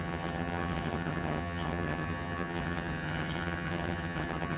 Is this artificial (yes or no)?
yes